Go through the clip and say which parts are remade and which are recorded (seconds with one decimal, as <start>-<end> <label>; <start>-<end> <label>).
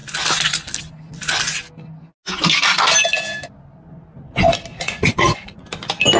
0.0-4.7 recorded; 4.7-5.6 remade; 5.6-6.2 recorded